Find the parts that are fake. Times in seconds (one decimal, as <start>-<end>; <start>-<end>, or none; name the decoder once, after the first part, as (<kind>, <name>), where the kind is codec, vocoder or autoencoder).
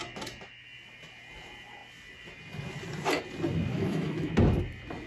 3.7-4.3 (autoencoder, DAC-VAE)